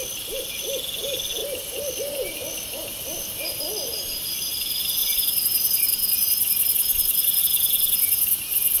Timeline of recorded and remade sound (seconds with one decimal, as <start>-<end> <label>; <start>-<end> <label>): 0.0-5.0 recorded; 5.0-7.4 remade; 7.4-8.8 recorded